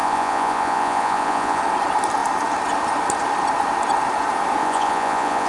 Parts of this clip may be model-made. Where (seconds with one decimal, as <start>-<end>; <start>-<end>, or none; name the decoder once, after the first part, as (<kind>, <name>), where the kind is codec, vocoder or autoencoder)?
0.0-1.6 (vocoder, Vocos); 4.6-5.5